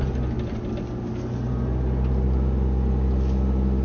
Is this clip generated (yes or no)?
no